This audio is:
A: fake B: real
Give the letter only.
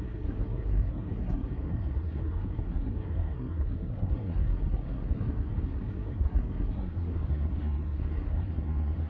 A